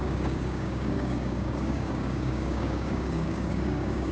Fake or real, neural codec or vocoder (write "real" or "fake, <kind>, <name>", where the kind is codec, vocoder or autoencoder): fake, codec, DAC